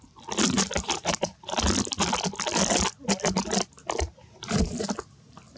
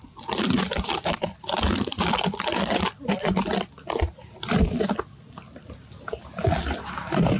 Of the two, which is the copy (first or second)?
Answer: second